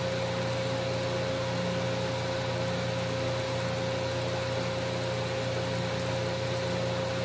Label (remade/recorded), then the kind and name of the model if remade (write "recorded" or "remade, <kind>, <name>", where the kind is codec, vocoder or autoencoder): recorded